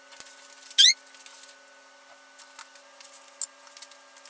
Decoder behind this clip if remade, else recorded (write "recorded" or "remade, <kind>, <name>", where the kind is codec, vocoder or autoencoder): recorded